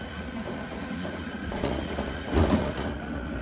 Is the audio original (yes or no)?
no